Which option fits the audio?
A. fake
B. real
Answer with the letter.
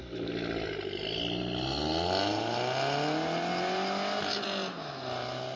B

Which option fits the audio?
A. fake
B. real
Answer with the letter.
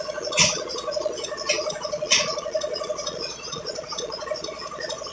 A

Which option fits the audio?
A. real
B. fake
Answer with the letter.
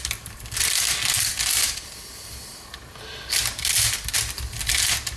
A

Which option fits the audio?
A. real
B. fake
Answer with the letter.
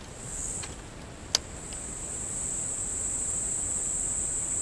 A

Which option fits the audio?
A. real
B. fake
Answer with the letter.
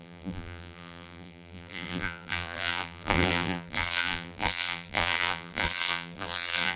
B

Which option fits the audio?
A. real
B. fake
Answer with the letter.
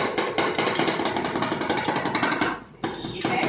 A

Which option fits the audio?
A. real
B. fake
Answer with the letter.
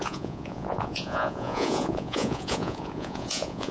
B